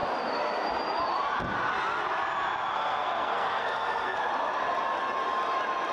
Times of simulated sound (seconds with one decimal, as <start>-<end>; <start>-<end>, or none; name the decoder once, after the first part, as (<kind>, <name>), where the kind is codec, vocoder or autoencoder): 2.7-4.2 (codec, SNAC)